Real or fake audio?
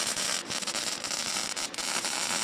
real